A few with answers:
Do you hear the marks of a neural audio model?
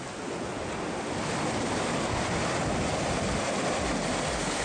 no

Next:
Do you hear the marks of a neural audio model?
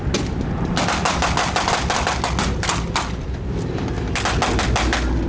no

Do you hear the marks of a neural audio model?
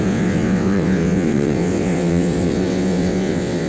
yes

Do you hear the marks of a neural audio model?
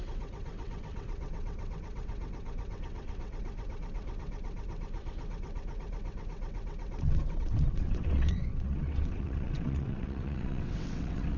yes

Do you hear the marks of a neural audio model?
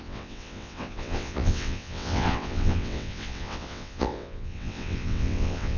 yes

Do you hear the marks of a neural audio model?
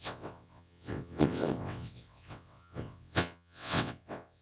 yes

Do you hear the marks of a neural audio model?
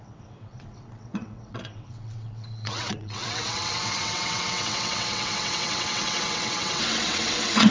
yes